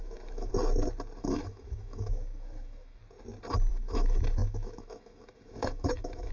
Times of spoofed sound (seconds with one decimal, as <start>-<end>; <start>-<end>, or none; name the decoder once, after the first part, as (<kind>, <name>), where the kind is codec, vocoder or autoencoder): 0.0-0.5 (autoencoder, DAC-VAE); 1.2-3.0; 3.7-6.3